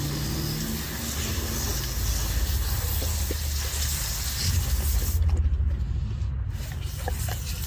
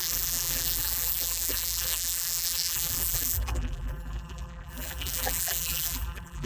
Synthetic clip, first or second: second